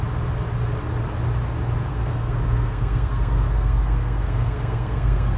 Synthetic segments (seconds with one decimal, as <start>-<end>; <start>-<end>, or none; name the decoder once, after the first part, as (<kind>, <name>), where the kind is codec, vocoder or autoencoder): 1.9-5.4 (codec, SNAC)